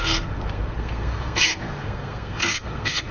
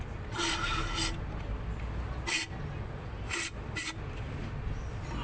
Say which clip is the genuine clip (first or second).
second